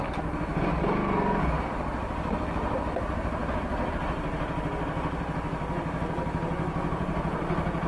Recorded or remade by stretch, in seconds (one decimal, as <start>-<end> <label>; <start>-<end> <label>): 0.0-7.9 recorded